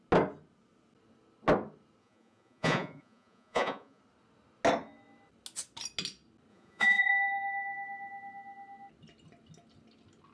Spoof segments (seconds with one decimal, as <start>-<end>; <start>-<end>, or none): 2.0-4.0; 6.5-7.1